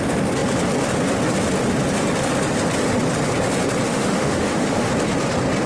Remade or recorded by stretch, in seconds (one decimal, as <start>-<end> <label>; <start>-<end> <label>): 0.0-3.9 recorded; 3.9-4.9 remade; 4.9-5.7 recorded